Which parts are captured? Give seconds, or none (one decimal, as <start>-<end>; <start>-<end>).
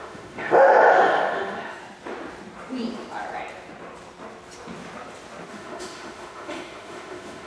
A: 1.8-5.5